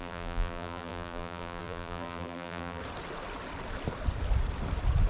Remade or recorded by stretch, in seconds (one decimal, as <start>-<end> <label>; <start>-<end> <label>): 0.0-2.8 remade; 2.8-5.1 recorded